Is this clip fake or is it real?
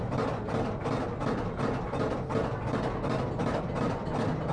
real